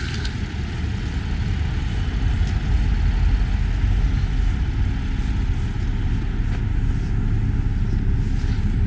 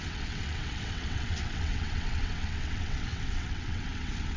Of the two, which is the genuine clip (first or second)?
first